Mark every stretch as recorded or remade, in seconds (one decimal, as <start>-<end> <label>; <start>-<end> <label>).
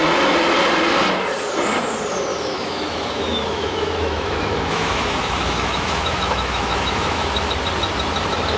0.0-2.3 recorded; 2.3-7.5 remade; 7.5-8.6 recorded